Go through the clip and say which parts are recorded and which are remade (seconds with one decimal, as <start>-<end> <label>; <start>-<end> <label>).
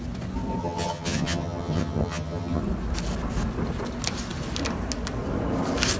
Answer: 0.0-0.6 recorded; 0.6-2.6 remade; 2.6-6.0 recorded